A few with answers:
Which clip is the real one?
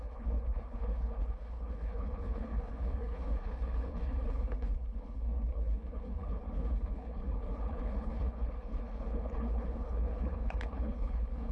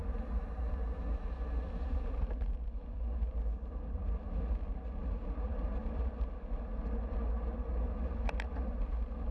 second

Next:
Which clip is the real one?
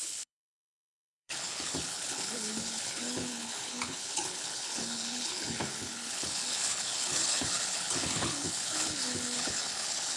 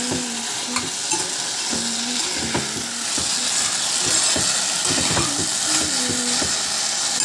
second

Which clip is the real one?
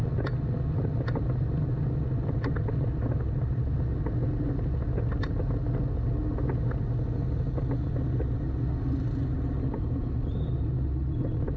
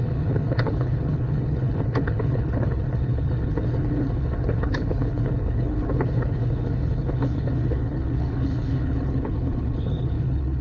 first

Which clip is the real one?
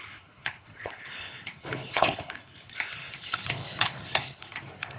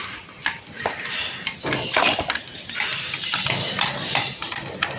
second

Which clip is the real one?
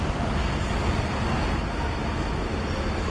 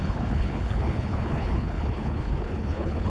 first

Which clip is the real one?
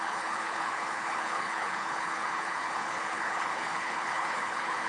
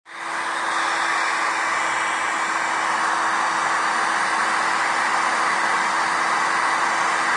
second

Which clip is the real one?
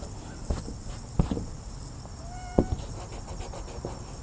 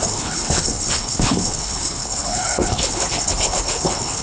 first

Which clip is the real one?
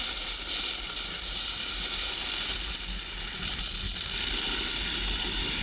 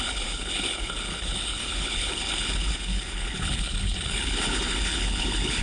first